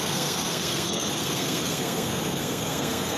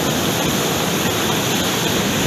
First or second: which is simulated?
first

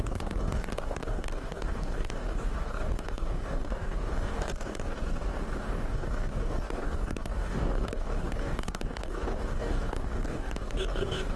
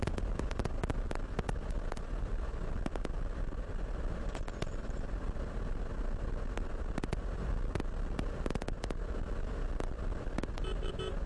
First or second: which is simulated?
first